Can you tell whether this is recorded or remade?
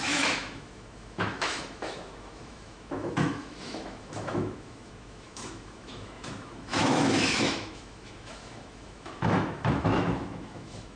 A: remade